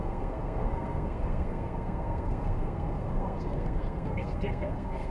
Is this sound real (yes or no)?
no